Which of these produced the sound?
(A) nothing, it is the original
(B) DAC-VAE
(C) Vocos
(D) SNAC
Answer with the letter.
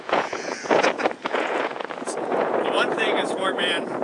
C